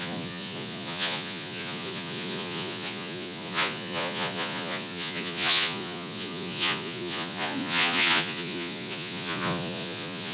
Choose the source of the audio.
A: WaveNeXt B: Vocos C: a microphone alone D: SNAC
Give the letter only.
B